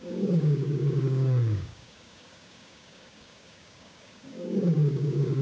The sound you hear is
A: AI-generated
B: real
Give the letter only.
A